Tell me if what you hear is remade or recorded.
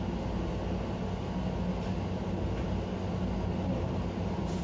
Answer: recorded